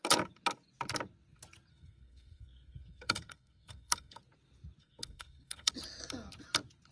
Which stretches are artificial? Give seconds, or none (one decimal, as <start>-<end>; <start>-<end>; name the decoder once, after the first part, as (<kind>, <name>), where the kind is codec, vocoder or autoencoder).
1.7-4.2 (codec, SNAC); 4.8-5.7